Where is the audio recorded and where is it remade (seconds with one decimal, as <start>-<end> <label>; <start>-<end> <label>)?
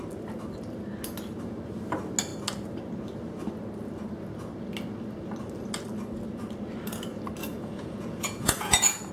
0.0-7.4 recorded; 7.4-9.1 remade